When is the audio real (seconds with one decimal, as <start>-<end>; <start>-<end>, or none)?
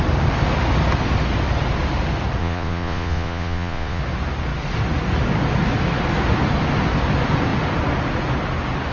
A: 0.0-2.4; 4.0-8.9